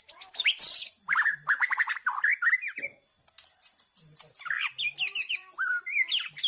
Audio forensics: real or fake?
real